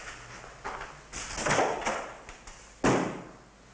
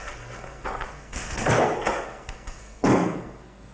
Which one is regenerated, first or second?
second